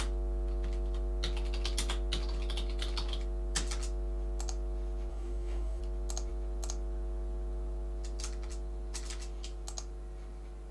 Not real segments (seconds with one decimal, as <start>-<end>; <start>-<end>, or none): 5.1-5.8